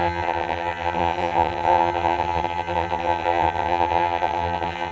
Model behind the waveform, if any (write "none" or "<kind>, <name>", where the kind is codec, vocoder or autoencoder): vocoder, HiFi-GAN